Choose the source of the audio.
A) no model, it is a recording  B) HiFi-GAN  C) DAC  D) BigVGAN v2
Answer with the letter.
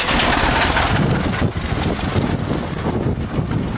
A